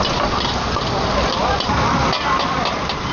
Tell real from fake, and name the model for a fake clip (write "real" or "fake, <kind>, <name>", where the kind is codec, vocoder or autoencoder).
real